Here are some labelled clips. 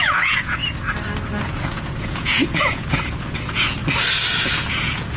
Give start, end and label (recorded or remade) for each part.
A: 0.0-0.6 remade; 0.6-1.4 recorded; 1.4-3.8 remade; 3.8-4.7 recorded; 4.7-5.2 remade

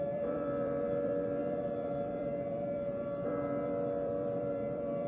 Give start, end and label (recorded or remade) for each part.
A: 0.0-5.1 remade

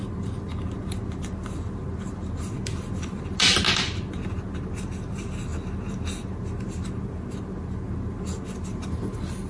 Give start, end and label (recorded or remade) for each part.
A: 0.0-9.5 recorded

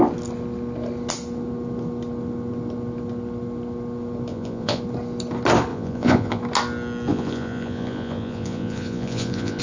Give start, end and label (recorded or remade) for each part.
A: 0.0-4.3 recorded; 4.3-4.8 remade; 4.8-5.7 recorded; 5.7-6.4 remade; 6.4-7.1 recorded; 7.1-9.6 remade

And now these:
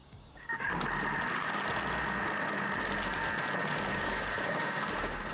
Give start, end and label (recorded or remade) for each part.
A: 0.0-0.7 remade; 0.7-3.9 recorded; 3.9-5.3 remade

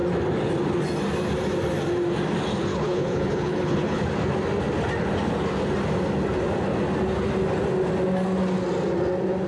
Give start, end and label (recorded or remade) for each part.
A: 0.0-2.7 recorded; 2.7-4.0 remade; 4.0-9.5 recorded

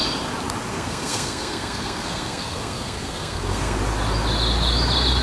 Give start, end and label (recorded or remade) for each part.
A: 0.0-0.7 recorded; 0.7-3.8 remade; 3.8-5.2 recorded